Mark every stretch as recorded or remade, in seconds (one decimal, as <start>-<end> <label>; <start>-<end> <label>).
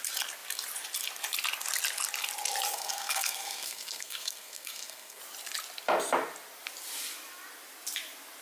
0.0-2.7 recorded; 2.7-5.2 remade; 5.2-8.4 recorded